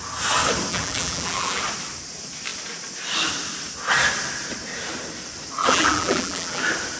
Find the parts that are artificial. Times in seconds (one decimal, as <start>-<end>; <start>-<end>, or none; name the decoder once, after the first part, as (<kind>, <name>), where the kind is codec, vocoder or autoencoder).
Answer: 0.7-1.6 (vocoder, BigVGAN v2); 5.6-6.6